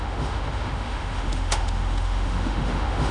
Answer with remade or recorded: remade